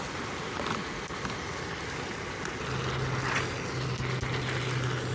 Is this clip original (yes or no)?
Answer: yes